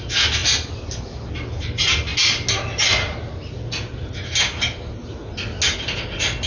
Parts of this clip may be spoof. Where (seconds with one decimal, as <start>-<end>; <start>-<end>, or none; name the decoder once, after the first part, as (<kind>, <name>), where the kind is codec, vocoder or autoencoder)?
none